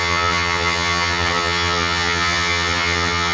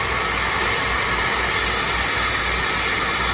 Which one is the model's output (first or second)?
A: first